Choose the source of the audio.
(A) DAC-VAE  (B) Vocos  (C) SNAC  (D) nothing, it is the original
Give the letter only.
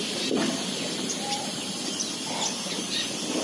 D